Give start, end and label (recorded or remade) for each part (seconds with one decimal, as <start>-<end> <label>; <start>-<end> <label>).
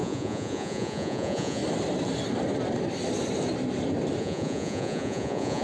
0.0-1.6 remade; 1.6-4.2 recorded; 4.2-5.6 remade